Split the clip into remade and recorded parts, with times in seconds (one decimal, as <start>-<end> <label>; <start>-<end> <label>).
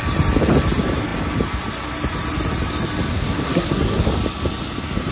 0.0-3.1 recorded; 3.1-4.1 remade; 4.1-5.1 recorded